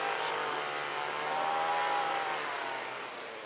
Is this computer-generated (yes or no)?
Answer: no